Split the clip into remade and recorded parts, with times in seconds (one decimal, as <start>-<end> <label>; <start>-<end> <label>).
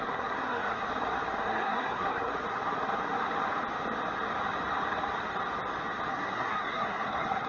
0.0-0.9 remade; 0.9-1.4 recorded; 1.4-2.3 remade; 2.3-6.1 recorded; 6.1-7.5 remade